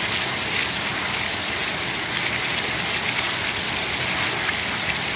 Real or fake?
real